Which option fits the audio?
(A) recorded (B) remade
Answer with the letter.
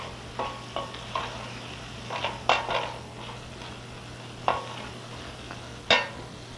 A